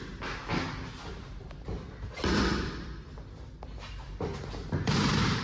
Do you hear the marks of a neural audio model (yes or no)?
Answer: no